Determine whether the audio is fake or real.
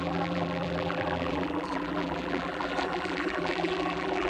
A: fake